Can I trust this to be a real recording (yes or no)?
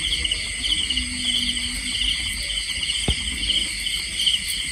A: yes